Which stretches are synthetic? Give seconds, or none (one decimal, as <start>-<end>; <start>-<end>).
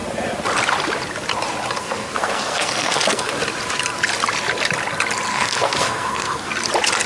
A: 1.8-3.3; 5.3-6.5